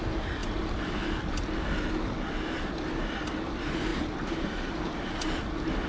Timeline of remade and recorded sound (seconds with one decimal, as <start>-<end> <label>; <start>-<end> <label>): 0.0-3.9 recorded; 3.9-4.7 remade; 4.7-5.9 recorded